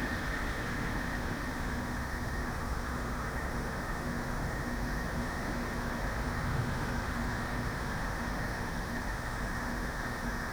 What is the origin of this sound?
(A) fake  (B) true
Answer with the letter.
A